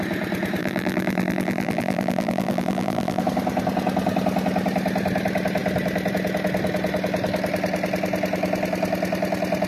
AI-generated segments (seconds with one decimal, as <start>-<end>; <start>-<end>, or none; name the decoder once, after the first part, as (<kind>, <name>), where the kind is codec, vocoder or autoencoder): 0.6-3.2 (vocoder, BigVGAN v2)